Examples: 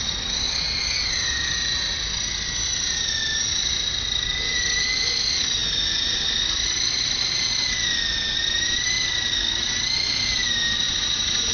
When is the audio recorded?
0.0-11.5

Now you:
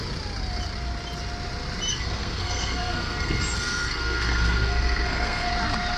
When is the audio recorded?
0.0-1.9; 5.5-6.0

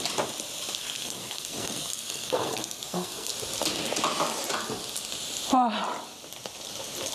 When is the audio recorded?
0.0-0.8; 3.3-7.1

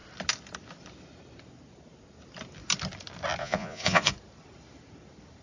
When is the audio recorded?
0.0-3.4; 4.1-5.4